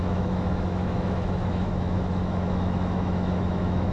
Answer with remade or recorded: remade